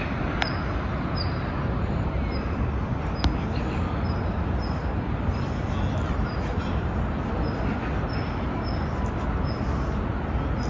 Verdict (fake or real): real